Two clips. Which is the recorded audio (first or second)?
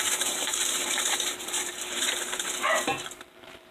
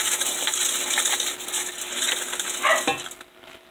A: second